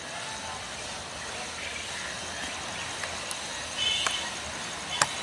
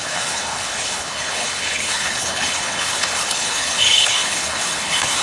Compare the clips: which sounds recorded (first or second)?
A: first